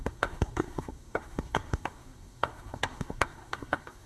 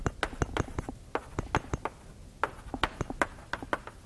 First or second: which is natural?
second